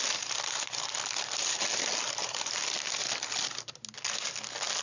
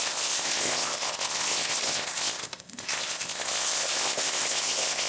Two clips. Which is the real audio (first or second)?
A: first